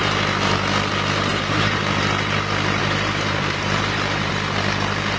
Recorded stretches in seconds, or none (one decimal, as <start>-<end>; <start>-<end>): 0.0-1.3; 1.8-2.8; 4.3-5.2